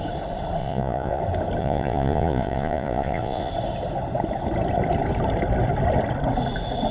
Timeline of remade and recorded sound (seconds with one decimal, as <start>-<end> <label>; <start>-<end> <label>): 0.0-0.6 recorded; 0.6-1.2 remade; 1.2-1.6 recorded; 1.6-3.5 remade; 3.5-6.9 recorded